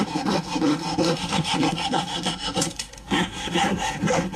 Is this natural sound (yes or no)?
no